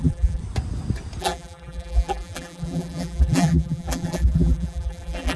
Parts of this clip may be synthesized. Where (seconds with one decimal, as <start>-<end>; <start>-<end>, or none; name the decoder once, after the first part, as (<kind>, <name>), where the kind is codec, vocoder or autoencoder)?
0.0-0.4 (vocoder, BigVGAN v2); 1.2-5.4